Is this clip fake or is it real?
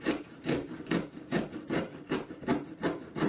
fake